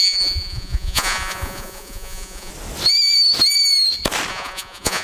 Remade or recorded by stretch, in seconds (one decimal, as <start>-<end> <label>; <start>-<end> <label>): 0.0-2.5 remade; 2.5-4.3 recorded; 4.3-5.0 remade